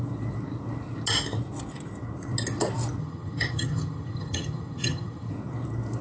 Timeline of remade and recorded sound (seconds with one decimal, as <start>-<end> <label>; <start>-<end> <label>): 0.0-3.0 recorded; 3.0-5.3 remade; 5.3-6.0 recorded